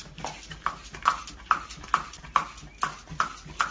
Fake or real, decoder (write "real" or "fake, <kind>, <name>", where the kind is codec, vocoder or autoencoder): real